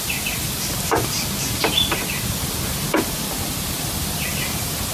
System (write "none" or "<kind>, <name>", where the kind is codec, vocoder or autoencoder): none